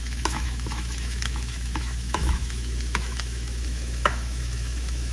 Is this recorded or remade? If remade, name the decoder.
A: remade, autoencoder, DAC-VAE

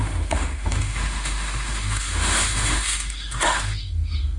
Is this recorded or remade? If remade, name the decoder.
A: remade, autoencoder, DAC-VAE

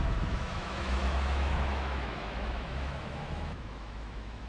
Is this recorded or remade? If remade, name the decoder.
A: remade, autoencoder, DAC-VAE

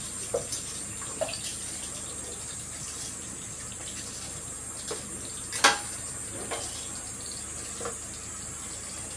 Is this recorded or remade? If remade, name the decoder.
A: recorded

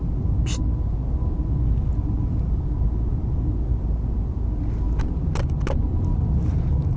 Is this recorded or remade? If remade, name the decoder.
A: recorded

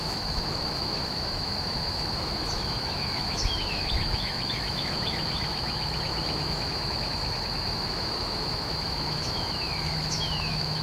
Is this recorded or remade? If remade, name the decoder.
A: remade, autoencoder, DAC-VAE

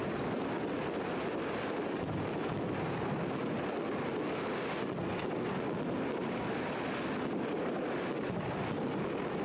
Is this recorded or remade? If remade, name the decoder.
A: recorded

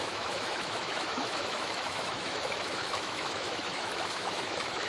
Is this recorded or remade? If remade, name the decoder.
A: remade, autoencoder, DAC-VAE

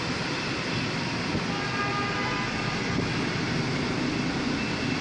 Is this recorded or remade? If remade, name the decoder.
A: recorded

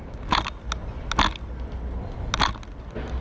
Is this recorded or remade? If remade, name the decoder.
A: recorded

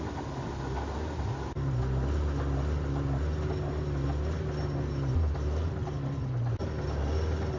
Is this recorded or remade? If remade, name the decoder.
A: recorded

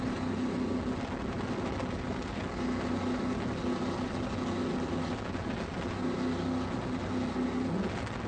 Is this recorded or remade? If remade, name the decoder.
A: recorded